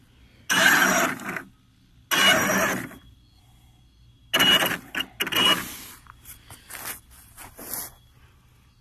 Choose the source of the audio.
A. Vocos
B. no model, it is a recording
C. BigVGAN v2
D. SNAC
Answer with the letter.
B